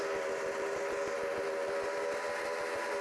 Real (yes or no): yes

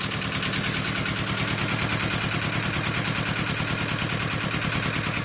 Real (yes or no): yes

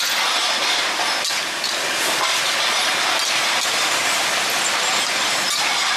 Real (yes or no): yes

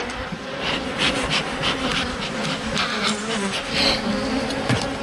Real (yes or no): yes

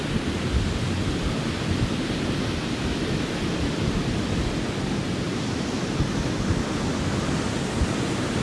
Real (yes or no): yes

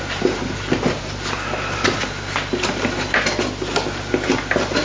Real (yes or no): yes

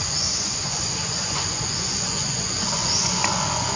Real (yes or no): no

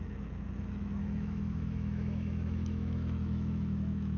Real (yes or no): no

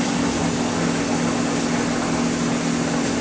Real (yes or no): yes